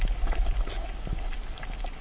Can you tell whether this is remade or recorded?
recorded